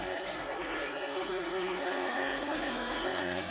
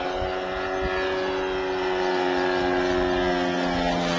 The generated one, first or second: first